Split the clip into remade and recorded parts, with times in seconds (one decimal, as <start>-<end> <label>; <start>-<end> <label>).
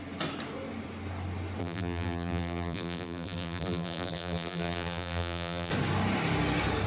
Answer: 0.0-1.6 recorded; 1.6-5.7 remade; 5.7-6.9 recorded